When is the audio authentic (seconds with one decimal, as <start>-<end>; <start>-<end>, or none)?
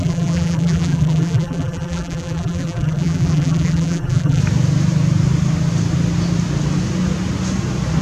4.4-8.0